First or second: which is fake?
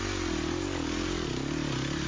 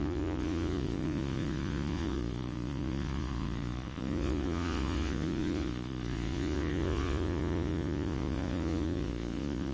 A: second